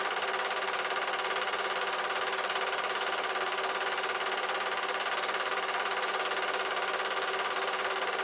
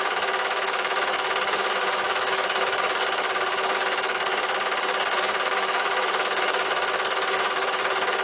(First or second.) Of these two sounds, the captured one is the first